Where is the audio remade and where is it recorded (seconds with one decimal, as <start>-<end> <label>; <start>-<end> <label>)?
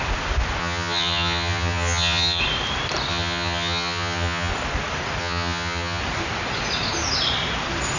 0.0-0.6 recorded; 0.6-2.4 remade; 2.4-3.1 recorded; 3.1-4.5 remade; 4.5-5.2 recorded; 5.2-6.0 remade; 6.0-8.0 recorded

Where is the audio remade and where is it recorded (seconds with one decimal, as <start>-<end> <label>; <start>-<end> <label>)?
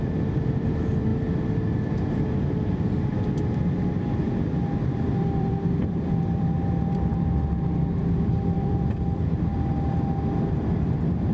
0.0-1.1 remade; 1.1-5.2 recorded; 5.2-9.5 remade; 9.5-10.5 recorded; 10.5-11.3 remade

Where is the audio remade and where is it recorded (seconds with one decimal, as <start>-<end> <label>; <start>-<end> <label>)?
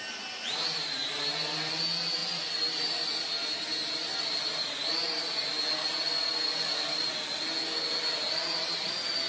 0.0-9.3 recorded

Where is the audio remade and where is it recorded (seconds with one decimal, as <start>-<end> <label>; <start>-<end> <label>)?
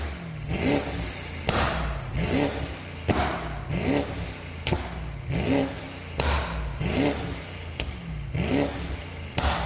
0.0-9.7 recorded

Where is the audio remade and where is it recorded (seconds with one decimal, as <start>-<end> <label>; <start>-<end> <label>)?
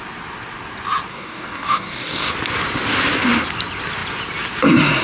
0.0-1.1 recorded; 1.1-2.3 remade; 2.3-5.0 recorded